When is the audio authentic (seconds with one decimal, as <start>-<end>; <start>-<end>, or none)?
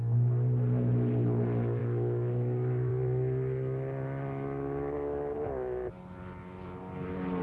0.0-1.8; 2.9-7.4